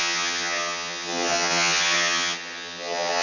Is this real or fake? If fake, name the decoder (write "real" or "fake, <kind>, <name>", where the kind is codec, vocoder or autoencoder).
fake, vocoder, HiFi-GAN